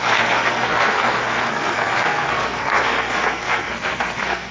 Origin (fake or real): fake